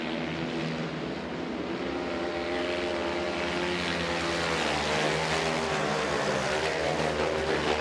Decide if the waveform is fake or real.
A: real